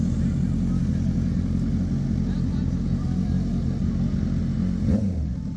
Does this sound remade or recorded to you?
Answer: recorded